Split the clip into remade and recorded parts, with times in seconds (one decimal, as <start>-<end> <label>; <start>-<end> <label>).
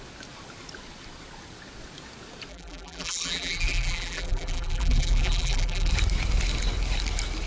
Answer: 0.0-2.5 recorded; 2.5-5.9 remade; 5.9-7.5 recorded